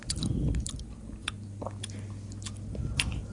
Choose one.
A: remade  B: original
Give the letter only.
B